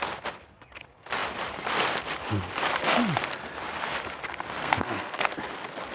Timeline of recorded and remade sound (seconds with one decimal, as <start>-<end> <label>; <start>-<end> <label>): 0.0-4.6 recorded; 4.6-5.4 remade; 5.4-5.9 recorded